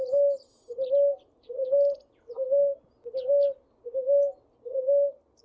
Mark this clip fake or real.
real